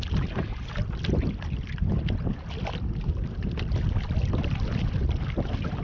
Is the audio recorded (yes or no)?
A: yes